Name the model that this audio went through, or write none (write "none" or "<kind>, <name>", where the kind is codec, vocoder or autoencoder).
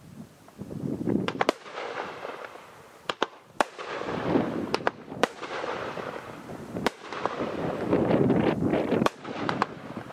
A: vocoder, BigVGAN v2